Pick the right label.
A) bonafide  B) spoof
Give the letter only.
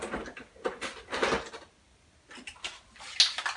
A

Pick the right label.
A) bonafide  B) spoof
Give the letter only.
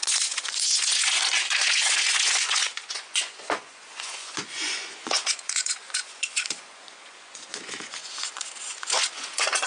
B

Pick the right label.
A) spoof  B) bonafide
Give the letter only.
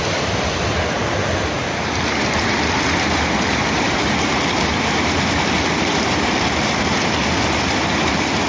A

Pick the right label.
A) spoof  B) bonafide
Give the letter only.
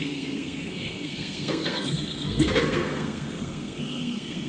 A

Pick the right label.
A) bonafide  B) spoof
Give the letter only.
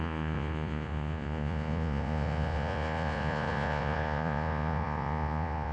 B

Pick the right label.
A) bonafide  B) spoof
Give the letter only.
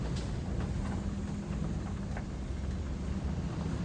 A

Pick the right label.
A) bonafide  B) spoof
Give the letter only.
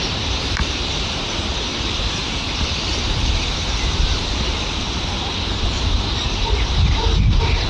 B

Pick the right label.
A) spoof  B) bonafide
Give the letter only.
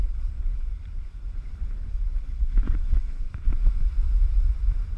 A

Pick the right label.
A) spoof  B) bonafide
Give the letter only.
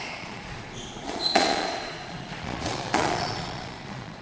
A